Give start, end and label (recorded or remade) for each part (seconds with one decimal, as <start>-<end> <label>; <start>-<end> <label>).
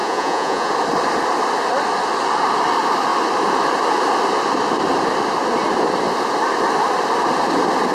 0.0-0.7 remade; 0.7-7.9 recorded